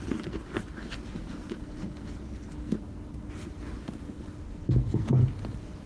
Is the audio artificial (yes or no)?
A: yes